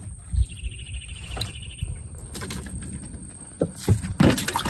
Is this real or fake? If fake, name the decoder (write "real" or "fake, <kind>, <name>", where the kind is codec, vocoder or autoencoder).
real